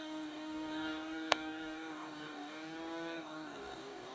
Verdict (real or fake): fake